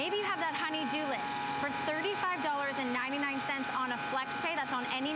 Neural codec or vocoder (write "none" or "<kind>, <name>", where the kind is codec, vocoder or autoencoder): none